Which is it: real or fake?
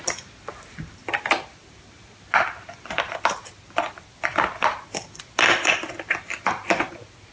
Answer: real